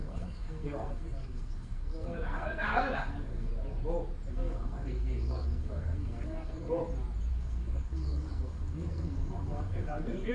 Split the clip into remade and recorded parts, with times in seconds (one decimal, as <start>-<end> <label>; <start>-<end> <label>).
0.0-3.5 remade; 3.5-4.3 recorded; 4.3-6.8 remade; 6.8-7.3 recorded; 7.3-10.3 remade